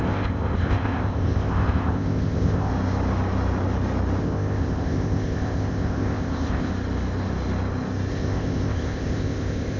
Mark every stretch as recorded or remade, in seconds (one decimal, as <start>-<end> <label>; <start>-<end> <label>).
0.0-2.7 remade; 2.7-4.2 recorded; 4.2-6.7 remade; 6.7-8.1 recorded; 8.1-9.8 remade